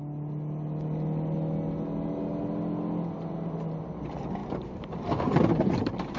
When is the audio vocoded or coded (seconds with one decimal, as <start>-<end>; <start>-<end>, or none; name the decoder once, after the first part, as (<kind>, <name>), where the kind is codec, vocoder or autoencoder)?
none